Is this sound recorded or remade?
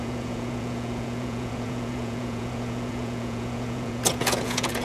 remade